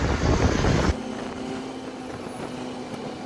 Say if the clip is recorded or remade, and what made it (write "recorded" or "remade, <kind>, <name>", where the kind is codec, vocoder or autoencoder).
recorded